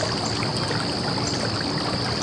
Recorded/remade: recorded